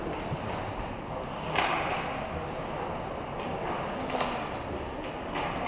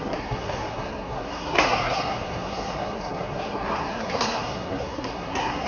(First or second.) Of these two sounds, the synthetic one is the second